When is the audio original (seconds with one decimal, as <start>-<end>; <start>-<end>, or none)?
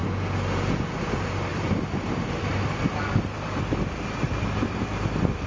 0.0-5.5